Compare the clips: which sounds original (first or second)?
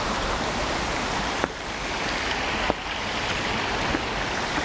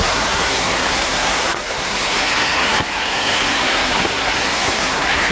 first